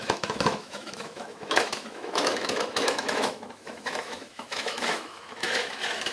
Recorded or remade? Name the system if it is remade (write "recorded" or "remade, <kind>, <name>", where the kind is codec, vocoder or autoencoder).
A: remade, autoencoder, DAC-VAE